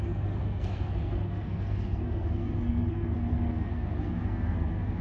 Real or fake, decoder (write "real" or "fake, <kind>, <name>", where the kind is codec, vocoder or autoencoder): fake, codec, SNAC